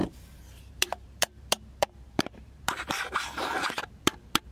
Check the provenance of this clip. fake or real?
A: fake